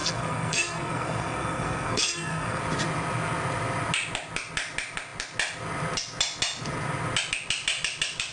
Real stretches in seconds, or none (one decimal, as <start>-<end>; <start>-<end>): 2.6-8.3

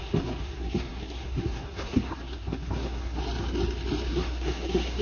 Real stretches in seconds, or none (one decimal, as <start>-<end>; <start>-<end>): 3.2-4.1

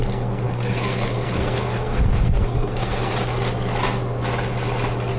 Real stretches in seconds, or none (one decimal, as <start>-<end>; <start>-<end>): 3.1-5.2

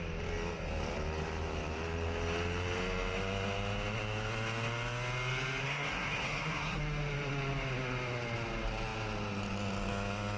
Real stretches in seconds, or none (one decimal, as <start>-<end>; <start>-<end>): 0.0-5.6; 6.8-10.4

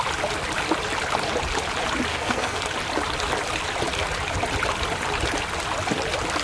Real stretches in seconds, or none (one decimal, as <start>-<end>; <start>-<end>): 0.0-2.1; 2.6-6.4